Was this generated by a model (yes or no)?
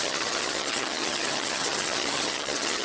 yes